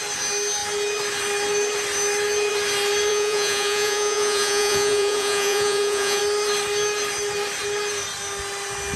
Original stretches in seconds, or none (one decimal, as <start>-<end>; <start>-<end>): 0.0-3.1; 6.2-9.0